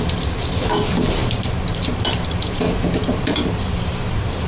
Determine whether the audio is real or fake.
fake